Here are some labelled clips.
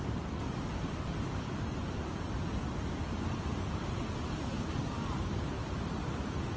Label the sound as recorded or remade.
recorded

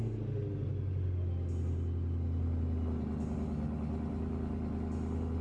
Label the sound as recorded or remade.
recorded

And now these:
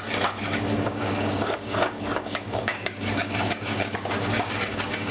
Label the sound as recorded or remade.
remade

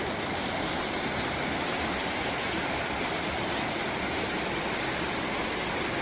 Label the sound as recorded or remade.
recorded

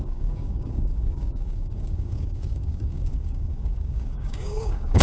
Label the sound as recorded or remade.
remade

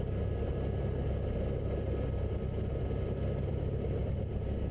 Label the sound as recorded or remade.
recorded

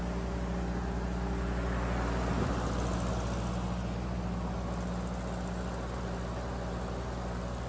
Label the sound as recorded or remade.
recorded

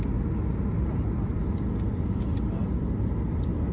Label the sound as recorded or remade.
recorded